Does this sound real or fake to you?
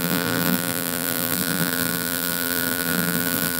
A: fake